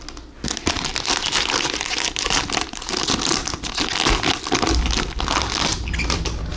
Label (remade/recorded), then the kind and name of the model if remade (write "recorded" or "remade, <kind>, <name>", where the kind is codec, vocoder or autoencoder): recorded